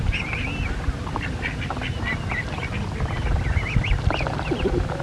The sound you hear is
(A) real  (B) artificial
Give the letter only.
A